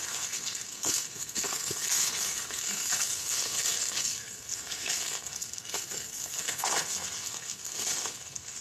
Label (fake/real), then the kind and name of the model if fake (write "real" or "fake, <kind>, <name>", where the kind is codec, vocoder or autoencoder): fake, codec, SNAC